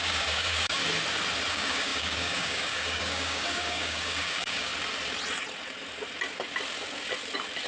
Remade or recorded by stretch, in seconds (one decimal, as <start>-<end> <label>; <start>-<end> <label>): 0.0-0.8 remade; 0.8-1.5 recorded; 1.5-4.7 remade; 4.7-7.7 recorded